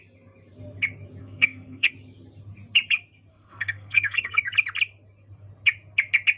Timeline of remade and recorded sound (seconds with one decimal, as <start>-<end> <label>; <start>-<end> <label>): 0.0-1.2 recorded; 1.2-1.9 remade; 1.9-3.3 recorded; 3.3-4.5 remade; 4.5-6.4 recorded